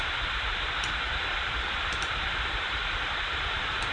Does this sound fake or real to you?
fake